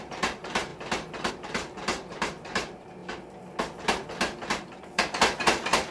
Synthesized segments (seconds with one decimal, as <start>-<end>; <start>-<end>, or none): 0.0-0.7; 1.3-3.0; 4.5-5.9